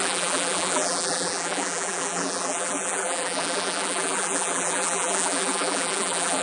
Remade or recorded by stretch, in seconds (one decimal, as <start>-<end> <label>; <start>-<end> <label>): 0.0-6.4 remade